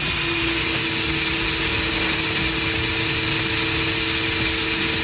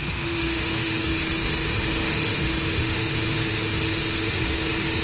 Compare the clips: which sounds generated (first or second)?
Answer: second